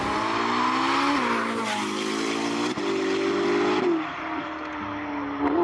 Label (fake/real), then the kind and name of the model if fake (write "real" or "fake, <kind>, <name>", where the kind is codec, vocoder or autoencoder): real